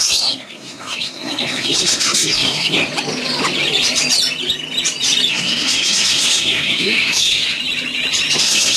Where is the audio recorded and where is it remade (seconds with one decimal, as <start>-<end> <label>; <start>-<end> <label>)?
0.0-2.8 remade; 2.8-5.3 recorded; 5.3-7.6 remade; 7.6-8.4 recorded; 8.4-8.8 remade